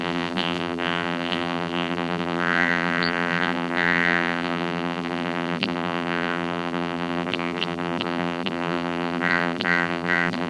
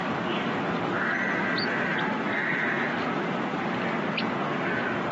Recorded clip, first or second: second